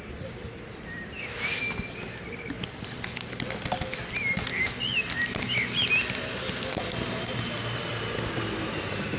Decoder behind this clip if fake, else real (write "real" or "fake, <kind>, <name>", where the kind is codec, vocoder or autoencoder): real